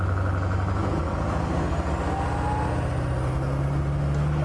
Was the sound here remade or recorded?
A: recorded